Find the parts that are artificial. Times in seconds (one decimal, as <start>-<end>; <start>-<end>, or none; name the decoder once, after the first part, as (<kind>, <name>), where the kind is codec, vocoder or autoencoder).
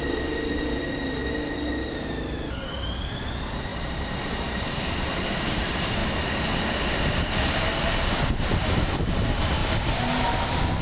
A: 0.0-1.2 (vocoder, BigVGAN v2); 1.9-6.0; 8.3-9.6